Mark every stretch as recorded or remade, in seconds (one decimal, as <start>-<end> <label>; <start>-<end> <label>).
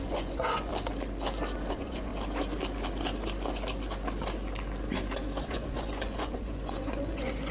0.0-0.7 remade; 0.7-1.7 recorded; 1.7-2.1 remade; 2.1-5.4 recorded; 5.4-7.5 remade